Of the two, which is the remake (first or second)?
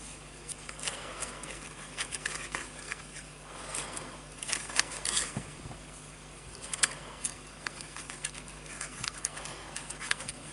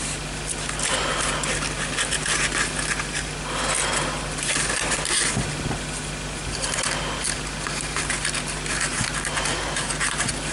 first